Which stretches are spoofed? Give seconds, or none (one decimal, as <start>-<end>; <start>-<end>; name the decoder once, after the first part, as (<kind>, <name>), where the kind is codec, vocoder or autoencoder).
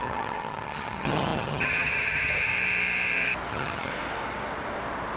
0.0-2.5 (vocoder, HiFi-GAN); 3.5-3.9